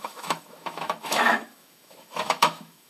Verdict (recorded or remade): remade